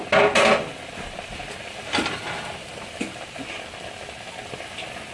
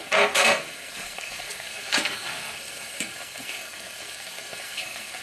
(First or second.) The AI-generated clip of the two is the second